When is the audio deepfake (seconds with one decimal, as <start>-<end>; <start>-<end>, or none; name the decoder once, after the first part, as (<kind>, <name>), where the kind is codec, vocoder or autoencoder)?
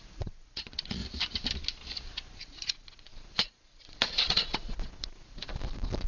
0.0-1.0 (vocoder, Vocos); 2.4-5.5